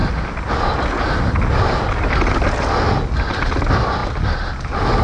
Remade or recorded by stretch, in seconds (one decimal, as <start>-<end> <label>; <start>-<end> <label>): 0.0-5.0 recorded